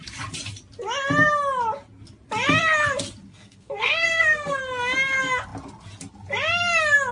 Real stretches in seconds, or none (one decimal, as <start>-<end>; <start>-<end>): 0.0-3.3; 4.6-7.1